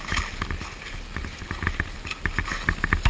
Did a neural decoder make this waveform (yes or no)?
no